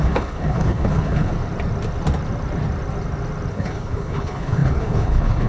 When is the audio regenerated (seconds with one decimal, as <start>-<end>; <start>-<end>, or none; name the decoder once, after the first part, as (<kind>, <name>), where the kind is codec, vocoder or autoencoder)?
0.0-1.3 (codec, HILCodec); 3.5-5.5